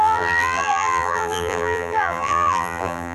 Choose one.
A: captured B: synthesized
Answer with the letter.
B